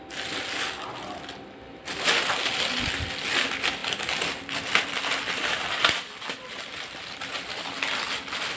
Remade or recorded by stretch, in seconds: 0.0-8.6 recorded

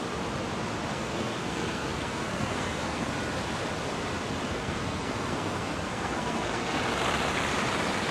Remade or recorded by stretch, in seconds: 0.0-0.9 recorded; 0.9-3.1 remade; 3.1-4.4 recorded; 4.4-6.8 remade; 6.8-8.1 recorded

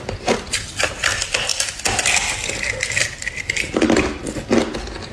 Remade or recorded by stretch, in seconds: 0.0-5.1 recorded

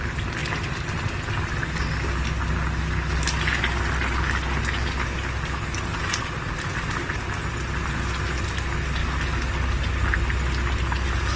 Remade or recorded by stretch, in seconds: 0.0-11.4 recorded